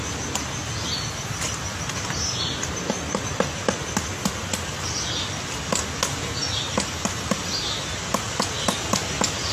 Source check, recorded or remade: recorded